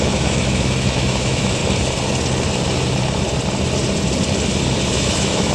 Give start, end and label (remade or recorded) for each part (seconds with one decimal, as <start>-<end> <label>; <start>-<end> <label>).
0.0-1.6 remade; 1.6-4.9 recorded; 4.9-5.5 remade